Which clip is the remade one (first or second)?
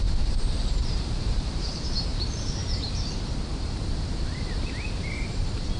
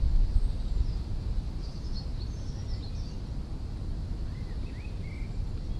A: first